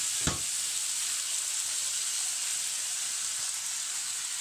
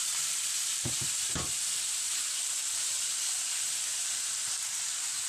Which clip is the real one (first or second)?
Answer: first